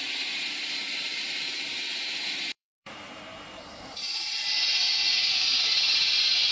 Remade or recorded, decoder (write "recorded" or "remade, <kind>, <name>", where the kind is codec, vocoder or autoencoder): remade, vocoder, BigVGAN v2